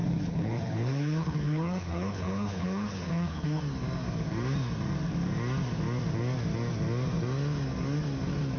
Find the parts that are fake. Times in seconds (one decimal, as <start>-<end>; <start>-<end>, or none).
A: 0.0-3.6